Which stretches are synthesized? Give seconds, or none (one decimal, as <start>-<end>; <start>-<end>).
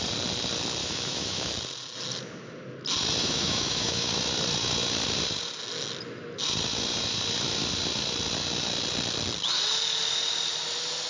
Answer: 0.8-1.5; 3.2-4.1